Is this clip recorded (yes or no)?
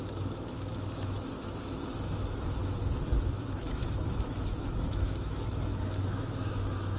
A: no